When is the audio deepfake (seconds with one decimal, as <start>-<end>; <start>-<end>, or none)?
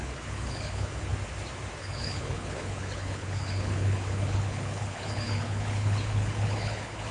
0.0-1.1; 1.8-7.1